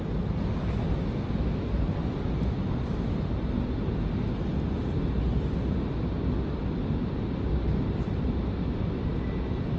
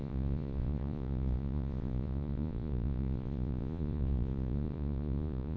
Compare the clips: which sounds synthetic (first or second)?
second